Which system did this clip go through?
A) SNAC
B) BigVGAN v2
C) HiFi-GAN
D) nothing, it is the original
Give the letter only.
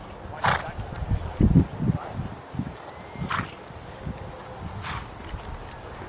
D